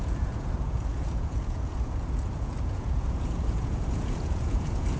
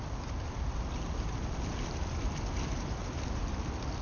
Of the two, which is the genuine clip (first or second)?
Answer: second